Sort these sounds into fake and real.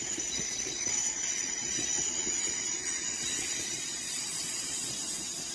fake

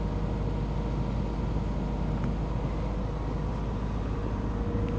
real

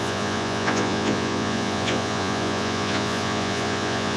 fake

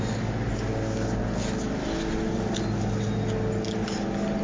real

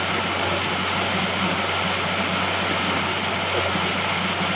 real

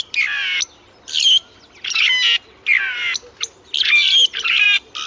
real